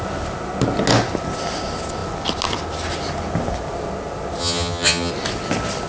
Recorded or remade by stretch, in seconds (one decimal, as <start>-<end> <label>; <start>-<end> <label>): 0.0-4.4 recorded; 4.4-5.1 remade; 5.1-5.9 recorded